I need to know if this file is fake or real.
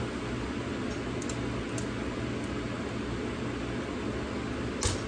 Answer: real